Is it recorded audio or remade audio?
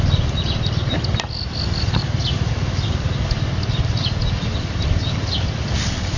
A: recorded